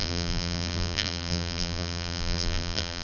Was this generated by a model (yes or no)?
yes